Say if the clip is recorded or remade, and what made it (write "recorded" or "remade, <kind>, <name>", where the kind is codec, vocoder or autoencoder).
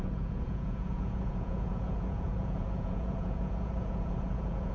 remade, vocoder, Vocos